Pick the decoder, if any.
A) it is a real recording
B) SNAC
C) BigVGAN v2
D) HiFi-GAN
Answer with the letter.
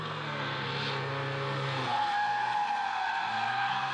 B